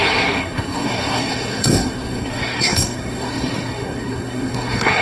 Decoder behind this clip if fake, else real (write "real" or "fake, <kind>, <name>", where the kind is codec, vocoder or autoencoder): fake, codec, SNAC